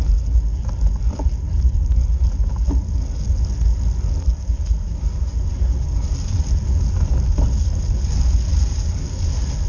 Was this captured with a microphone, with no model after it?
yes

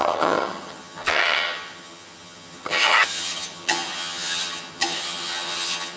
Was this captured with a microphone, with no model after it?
no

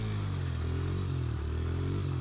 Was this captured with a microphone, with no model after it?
yes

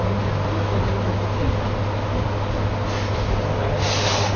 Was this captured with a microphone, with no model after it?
yes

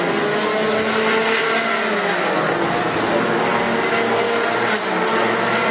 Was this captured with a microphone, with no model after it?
yes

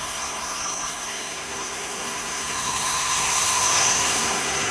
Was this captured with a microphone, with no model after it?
no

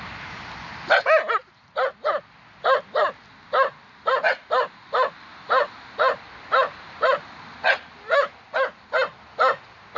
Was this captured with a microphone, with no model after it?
yes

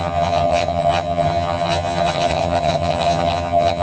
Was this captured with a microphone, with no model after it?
no